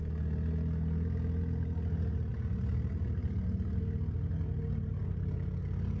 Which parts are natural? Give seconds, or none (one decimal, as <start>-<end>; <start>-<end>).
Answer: 0.0-2.3; 3.8-6.0

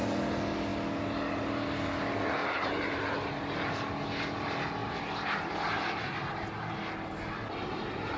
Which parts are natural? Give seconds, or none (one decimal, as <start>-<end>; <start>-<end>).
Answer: 0.0-2.4; 3.0-4.8; 5.5-8.2